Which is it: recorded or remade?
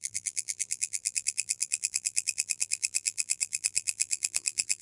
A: remade